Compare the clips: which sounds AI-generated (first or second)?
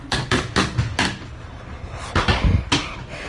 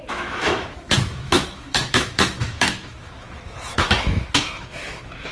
second